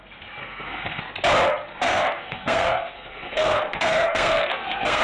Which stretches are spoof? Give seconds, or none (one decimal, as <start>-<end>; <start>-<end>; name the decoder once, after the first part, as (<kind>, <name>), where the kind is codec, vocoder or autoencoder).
0.4-1.0 (codec, SNAC); 1.7-5.0